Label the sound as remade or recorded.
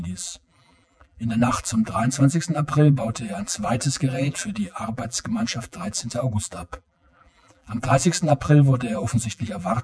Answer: remade